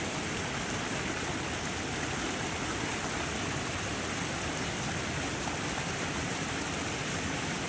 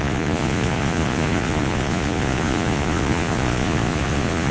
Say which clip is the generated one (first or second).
second